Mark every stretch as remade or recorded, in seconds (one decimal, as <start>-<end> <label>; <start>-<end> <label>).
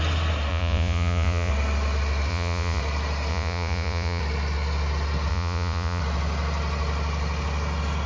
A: 0.0-0.5 recorded; 0.5-1.5 remade; 1.5-2.3 recorded; 2.3-2.8 remade; 2.8-3.3 recorded; 3.3-4.2 remade; 4.2-5.3 recorded; 5.3-6.0 remade; 6.0-8.1 recorded